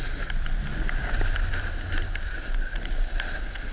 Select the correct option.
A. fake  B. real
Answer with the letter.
B